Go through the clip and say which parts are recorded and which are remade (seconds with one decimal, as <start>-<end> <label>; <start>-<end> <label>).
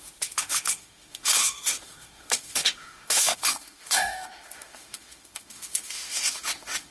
0.0-6.9 remade